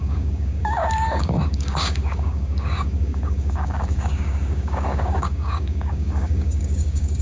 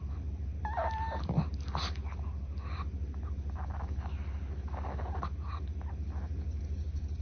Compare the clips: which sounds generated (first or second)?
first